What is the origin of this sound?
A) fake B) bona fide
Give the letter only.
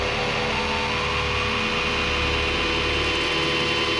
B